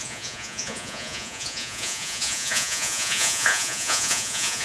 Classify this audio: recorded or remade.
remade